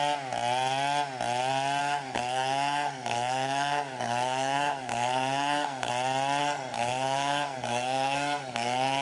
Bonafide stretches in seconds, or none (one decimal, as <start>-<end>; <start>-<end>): 0.0-1.8; 5.9-6.4